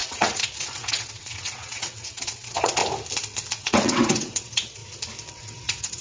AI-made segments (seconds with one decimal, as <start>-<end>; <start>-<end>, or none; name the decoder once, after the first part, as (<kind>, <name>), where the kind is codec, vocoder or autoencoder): 0.0-2.8 (vocoder, WaveNeXt); 3.5-4.8; 5.3-6.0